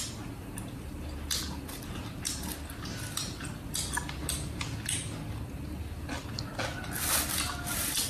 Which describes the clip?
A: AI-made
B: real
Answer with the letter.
B